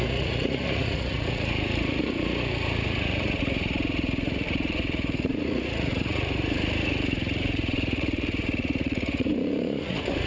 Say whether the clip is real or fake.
fake